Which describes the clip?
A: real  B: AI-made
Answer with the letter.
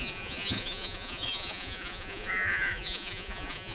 B